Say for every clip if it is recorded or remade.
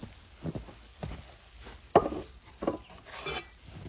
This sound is recorded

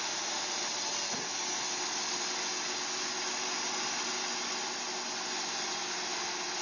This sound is recorded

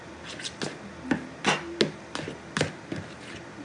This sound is recorded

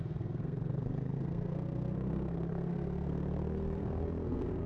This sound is remade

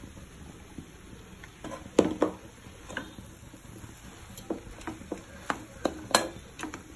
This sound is recorded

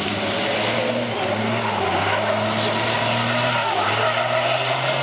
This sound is recorded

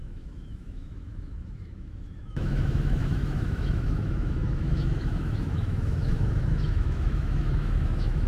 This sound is remade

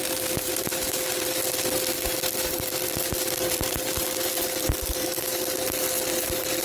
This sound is recorded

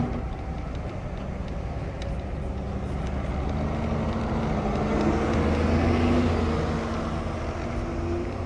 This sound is recorded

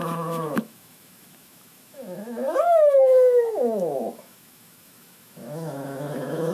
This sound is remade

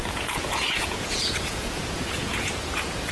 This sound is remade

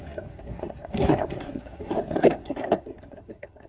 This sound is remade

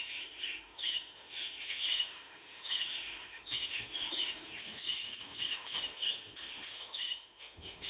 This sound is remade